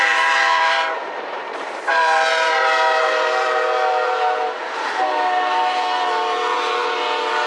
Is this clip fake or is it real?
fake